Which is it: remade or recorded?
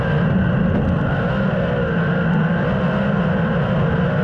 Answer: recorded